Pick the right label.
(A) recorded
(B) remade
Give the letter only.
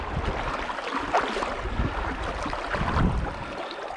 A